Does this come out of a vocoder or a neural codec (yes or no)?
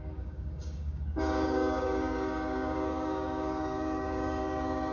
yes